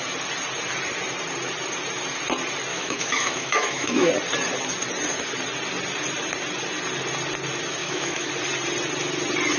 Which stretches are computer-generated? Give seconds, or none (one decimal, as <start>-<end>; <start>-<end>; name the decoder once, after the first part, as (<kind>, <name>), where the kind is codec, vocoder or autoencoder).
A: 2.7-4.1 (autoencoder, DAC-VAE); 7.8-8.3